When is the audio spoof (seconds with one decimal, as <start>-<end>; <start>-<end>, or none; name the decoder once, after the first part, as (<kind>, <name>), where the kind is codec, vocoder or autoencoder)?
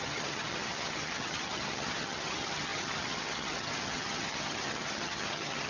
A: 0.0-5.7 (vocoder, HiFi-GAN)